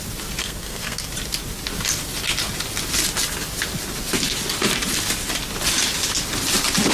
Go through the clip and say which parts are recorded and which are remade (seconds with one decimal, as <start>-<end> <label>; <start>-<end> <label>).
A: 0.0-0.4 recorded; 0.4-1.1 remade; 1.1-6.9 recorded